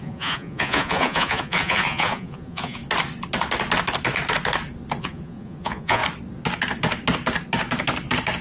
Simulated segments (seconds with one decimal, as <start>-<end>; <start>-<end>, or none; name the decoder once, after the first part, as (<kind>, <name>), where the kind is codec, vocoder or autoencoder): 0.0-2.8 (vocoder, Vocos); 5.0-6.0